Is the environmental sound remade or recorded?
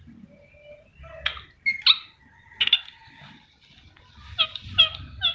recorded